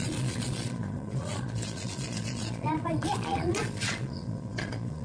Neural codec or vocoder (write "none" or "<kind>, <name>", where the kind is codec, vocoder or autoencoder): vocoder, Vocos